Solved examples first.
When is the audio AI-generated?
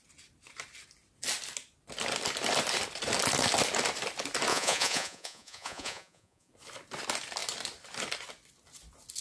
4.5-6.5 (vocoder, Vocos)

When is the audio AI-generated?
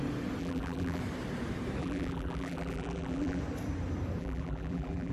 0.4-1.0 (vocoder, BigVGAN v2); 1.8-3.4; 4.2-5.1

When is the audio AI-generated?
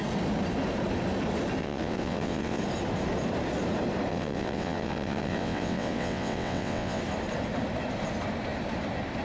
1.6-2.6 (vocoder, WaveNeXt); 4.1-7.0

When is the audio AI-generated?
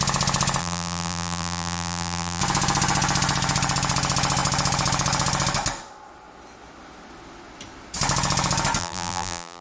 0.6-2.4 (vocoder, BigVGAN v2); 8.8-9.6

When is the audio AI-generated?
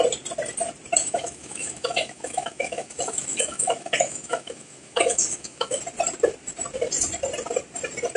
1.0-5.8 (autoencoder, DAC-VAE)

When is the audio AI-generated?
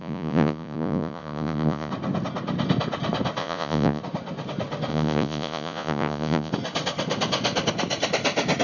0.0-1.9 (vocoder, Vocos); 3.4-4.0; 4.9-6.5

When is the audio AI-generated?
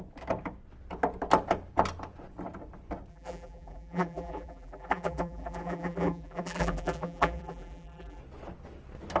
3.1-8.2 (vocoder, BigVGAN v2)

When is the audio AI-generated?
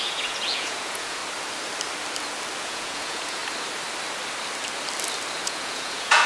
0.0-1.2 (vocoder, Vocos); 2.6-3.4; 5.4-6.3